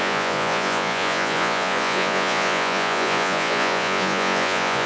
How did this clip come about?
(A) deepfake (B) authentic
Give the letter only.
A